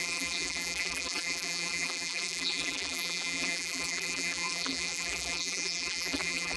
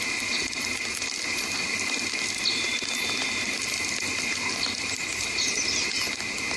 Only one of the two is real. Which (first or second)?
second